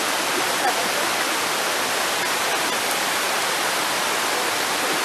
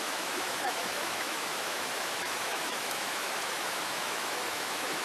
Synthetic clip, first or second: second